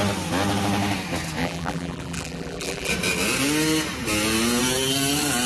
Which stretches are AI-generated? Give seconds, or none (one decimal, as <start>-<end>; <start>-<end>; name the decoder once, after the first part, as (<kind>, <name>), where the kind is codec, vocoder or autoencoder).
1.4-2.9 (vocoder, BigVGAN v2)